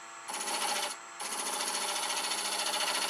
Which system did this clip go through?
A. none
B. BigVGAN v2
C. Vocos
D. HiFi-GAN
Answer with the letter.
A